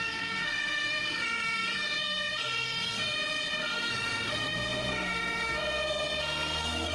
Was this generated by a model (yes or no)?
yes